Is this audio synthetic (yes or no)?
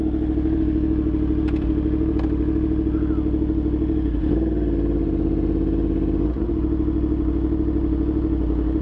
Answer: no